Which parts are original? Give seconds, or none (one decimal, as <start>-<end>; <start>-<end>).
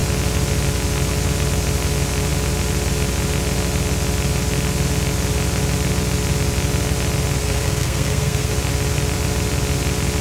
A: 0.0-7.4; 8.5-10.2